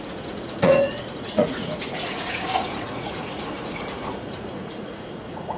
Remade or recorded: remade